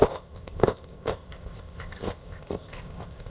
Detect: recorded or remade remade